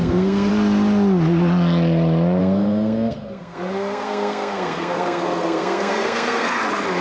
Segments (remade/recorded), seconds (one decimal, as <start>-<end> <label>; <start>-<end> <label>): 0.0-0.5 remade; 0.5-2.4 recorded; 2.4-6.6 remade; 6.6-7.0 recorded